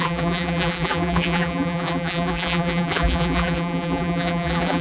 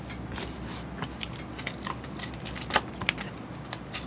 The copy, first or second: first